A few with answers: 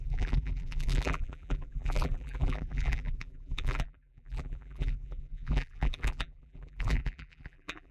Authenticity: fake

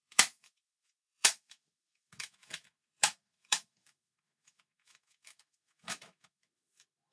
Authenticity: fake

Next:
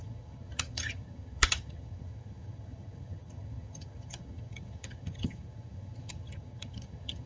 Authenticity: fake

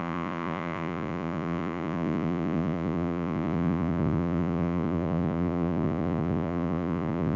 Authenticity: fake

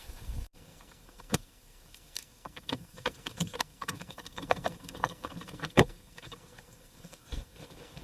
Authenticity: fake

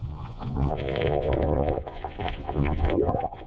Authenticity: fake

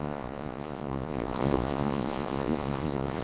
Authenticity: fake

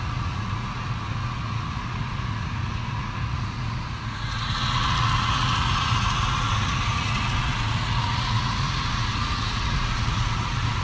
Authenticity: fake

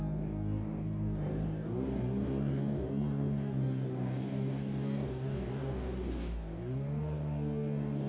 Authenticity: fake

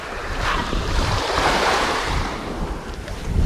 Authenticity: fake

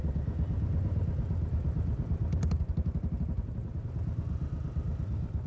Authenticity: real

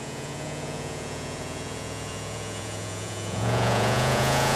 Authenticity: fake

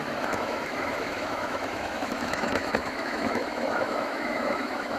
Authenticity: fake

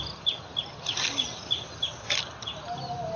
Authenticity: real